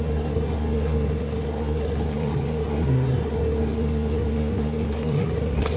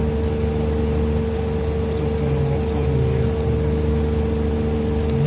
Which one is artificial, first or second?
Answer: first